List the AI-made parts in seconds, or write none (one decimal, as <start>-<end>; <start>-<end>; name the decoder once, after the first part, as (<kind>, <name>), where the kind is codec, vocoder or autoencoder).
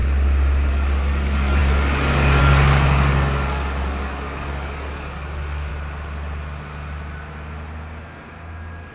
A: 0.7-5.7 (codec, DAC)